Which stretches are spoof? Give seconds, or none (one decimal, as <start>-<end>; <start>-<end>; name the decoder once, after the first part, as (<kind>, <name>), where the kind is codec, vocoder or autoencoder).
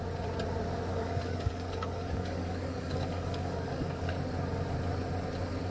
0.9-4.1 (codec, DAC)